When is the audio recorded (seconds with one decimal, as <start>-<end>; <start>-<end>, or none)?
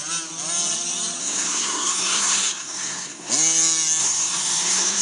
0.0-1.2; 3.3-4.0